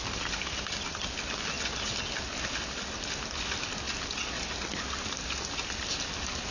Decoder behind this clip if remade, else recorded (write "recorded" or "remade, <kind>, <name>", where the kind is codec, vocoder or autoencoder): recorded